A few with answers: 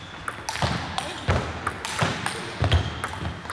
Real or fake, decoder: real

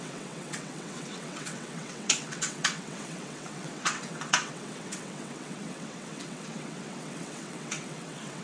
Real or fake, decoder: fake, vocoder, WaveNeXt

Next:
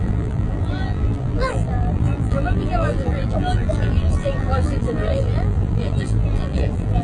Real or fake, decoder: fake, vocoder, BigVGAN v2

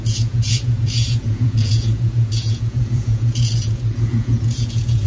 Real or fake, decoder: fake, vocoder, Vocos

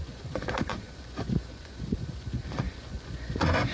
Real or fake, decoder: fake, vocoder, Vocos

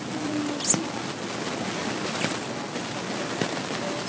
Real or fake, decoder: real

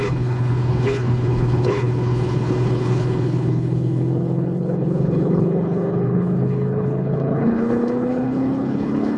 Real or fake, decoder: fake, codec, HILCodec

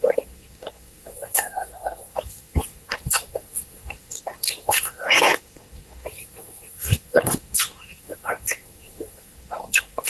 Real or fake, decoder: fake, codec, SNAC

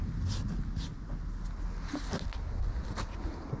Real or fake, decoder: real